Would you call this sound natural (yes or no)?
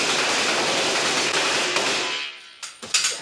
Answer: yes